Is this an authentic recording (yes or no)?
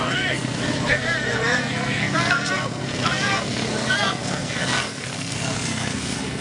no